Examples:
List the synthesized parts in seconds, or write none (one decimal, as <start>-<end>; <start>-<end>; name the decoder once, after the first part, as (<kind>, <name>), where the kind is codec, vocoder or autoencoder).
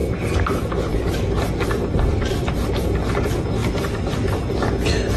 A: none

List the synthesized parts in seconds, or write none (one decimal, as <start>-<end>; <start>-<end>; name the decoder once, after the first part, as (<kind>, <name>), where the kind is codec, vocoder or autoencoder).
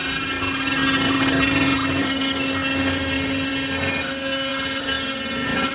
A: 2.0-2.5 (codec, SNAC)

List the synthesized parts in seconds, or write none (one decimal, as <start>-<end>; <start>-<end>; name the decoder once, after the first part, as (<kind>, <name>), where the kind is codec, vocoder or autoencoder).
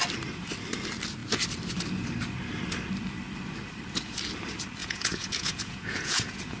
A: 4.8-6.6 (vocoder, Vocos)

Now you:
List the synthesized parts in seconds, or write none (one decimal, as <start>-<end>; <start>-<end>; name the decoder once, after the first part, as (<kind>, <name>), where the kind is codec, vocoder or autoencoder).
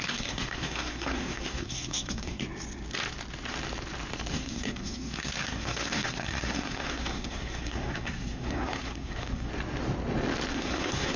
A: 0.0-2.4 (codec, SNAC); 4.3-9.5; 10.5-11.2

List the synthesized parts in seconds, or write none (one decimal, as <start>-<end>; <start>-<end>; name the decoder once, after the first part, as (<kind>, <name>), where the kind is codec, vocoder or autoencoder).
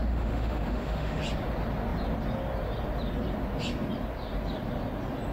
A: 0.0-1.2 (autoencoder, DAC-VAE)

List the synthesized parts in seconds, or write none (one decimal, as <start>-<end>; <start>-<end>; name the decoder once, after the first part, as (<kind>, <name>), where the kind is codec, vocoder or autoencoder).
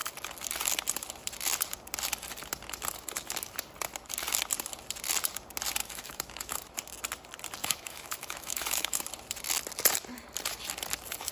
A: 5.8-6.6 (autoencoder, DAC-VAE); 7.6-9.0